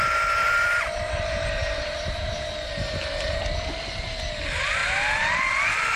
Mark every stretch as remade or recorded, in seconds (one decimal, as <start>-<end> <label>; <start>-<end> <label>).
0.0-0.4 recorded; 0.4-3.5 remade; 3.5-6.0 recorded